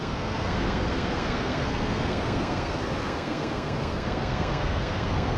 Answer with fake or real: fake